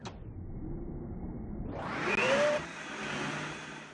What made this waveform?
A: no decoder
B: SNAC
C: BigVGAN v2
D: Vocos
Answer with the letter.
A